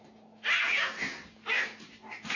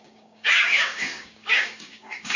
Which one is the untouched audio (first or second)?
first